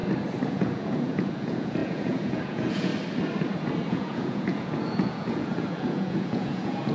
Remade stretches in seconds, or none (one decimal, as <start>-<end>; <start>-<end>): 0.5-2.9; 3.9-6.9